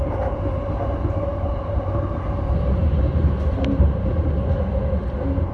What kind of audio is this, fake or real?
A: real